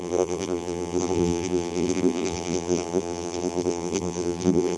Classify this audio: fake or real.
fake